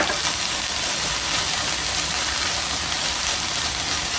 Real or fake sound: real